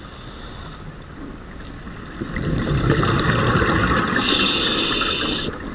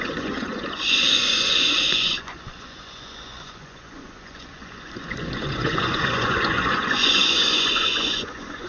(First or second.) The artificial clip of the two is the second